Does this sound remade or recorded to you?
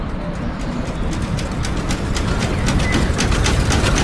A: recorded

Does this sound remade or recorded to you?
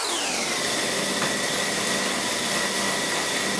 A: recorded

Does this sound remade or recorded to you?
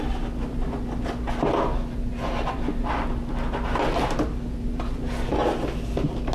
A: recorded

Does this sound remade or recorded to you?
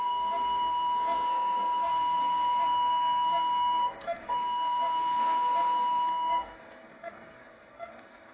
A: remade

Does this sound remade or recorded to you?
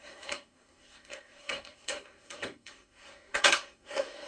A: remade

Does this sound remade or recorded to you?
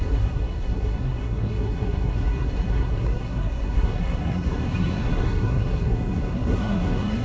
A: remade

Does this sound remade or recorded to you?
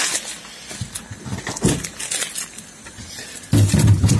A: recorded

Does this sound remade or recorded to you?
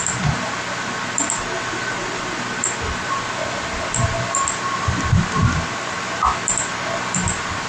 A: recorded